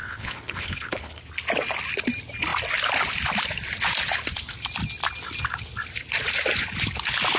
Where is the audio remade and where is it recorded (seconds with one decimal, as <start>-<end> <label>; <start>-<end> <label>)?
0.0-1.2 remade; 1.2-7.4 recorded